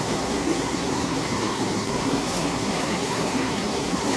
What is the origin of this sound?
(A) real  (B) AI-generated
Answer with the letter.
B